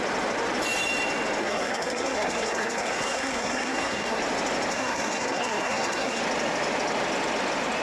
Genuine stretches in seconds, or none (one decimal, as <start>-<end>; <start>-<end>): 0.0-1.4; 4.2-4.7; 6.2-7.8